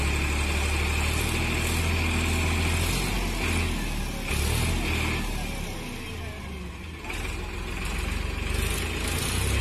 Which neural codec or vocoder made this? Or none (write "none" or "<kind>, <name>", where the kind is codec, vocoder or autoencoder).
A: none